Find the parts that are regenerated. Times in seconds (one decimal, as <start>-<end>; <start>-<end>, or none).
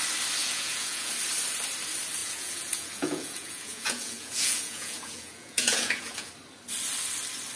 0.4-1.1; 2.2-6.3